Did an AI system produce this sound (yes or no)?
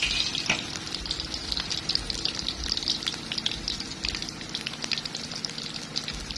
no